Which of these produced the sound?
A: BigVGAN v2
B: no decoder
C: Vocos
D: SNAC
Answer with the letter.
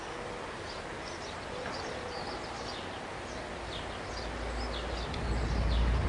B